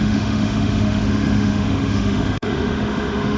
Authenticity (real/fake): fake